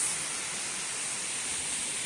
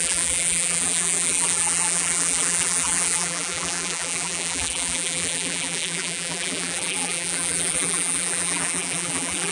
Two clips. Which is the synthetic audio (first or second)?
second